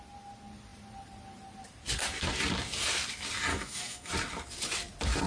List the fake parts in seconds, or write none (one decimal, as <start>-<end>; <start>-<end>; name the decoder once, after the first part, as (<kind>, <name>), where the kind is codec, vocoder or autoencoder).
3.5-4.1 (autoencoder, DAC-VAE)